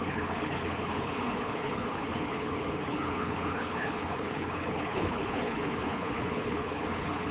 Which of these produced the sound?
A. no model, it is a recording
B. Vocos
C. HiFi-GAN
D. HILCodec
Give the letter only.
D